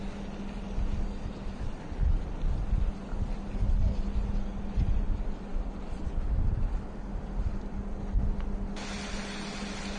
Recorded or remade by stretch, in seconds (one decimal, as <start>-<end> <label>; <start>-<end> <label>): 0.0-10.0 recorded